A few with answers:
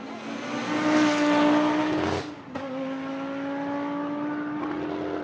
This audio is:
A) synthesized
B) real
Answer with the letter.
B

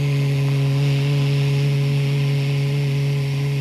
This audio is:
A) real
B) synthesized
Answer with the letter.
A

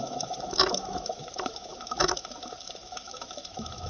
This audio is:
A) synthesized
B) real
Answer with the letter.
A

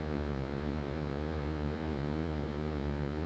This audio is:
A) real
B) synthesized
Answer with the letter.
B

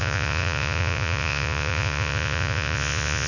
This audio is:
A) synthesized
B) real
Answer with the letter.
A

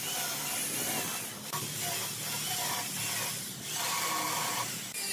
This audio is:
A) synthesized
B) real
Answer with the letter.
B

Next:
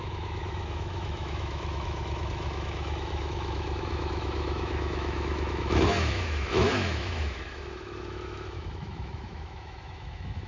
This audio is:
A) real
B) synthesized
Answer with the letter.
B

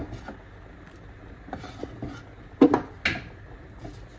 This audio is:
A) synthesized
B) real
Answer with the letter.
B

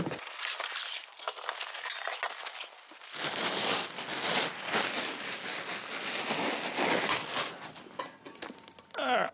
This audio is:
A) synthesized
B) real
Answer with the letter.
B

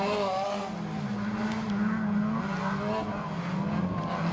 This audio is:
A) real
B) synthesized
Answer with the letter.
A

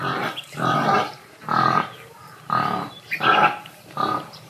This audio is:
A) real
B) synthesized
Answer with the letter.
B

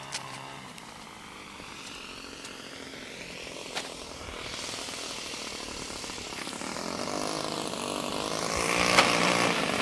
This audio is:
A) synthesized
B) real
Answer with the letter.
A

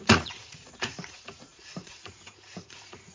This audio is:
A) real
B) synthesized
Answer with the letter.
B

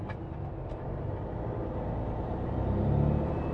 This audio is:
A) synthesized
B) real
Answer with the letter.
B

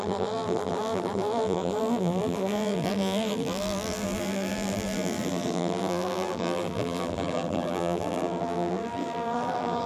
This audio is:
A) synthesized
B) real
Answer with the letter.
A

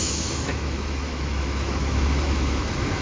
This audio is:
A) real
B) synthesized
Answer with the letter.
B